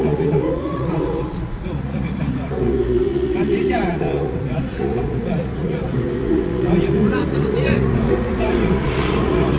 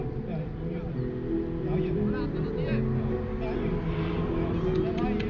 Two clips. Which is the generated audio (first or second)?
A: first